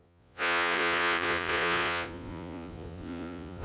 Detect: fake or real fake